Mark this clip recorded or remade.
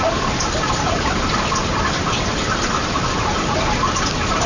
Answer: recorded